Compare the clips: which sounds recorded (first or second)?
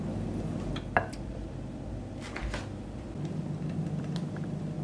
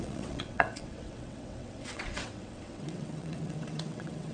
first